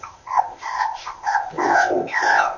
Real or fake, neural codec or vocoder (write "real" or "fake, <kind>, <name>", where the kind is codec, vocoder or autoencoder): fake, codec, ZipCodec